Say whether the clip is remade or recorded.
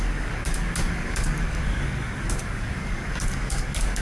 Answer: remade